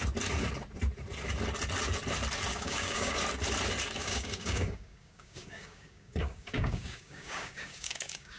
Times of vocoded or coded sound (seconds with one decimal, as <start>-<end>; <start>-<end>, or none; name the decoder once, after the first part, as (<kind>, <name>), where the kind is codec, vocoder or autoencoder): 2.5-3.2 (codec, DAC); 4.0-8.4